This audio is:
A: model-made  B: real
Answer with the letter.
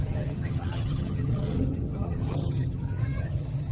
A